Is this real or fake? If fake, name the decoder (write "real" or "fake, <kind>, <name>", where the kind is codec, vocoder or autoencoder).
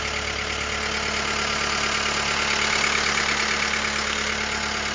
real